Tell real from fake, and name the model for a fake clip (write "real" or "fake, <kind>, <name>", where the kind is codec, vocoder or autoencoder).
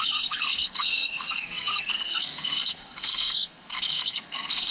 fake, codec, SNAC